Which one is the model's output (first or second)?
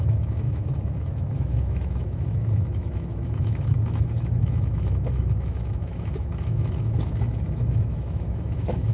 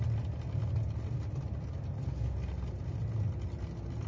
first